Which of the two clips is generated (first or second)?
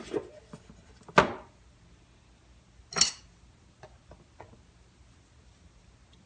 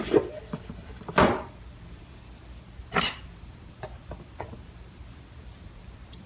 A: second